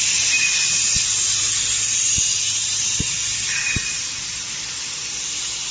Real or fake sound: real